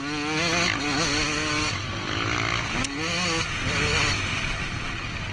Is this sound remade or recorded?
recorded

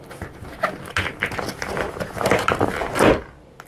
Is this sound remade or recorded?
recorded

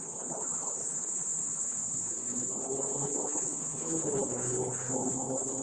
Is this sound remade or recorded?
remade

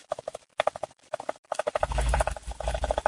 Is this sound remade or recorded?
remade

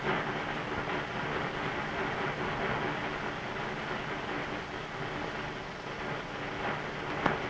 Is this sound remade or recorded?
recorded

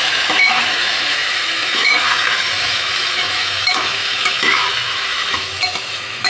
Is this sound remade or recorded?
remade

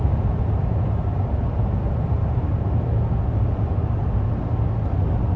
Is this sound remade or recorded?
recorded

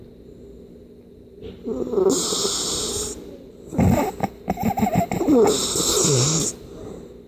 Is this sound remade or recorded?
recorded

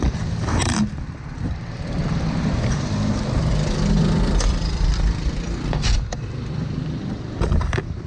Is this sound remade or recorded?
remade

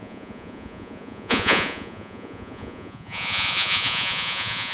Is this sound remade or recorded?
remade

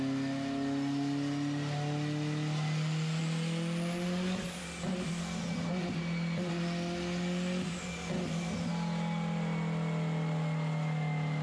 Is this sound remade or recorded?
recorded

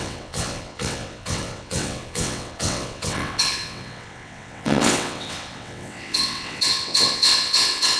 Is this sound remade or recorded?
remade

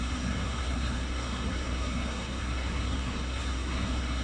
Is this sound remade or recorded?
remade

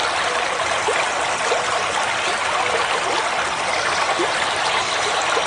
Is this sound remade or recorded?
recorded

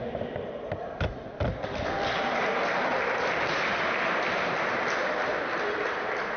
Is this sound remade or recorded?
recorded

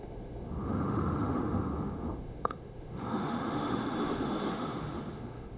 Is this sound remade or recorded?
remade